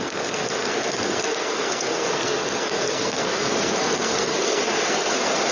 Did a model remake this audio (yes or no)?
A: yes